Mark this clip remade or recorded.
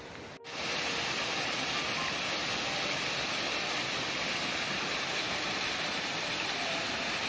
recorded